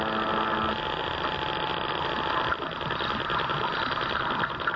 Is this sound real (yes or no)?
yes